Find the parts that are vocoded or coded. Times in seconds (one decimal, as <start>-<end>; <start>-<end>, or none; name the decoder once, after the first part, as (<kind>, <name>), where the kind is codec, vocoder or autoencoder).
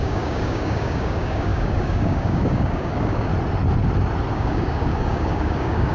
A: 0.0-3.3 (codec, DAC); 4.3-5.9